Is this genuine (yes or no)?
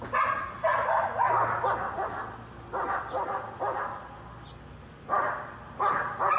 yes